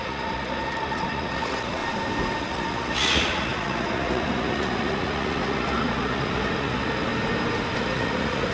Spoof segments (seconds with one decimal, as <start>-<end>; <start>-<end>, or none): 0.0-1.8; 2.4-7.1; 7.8-8.5